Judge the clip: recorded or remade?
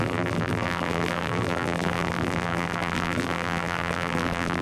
remade